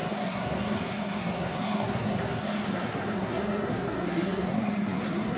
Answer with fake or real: fake